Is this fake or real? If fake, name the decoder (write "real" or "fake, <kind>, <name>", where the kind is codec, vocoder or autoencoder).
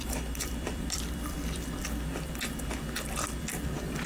fake, vocoder, BigVGAN v2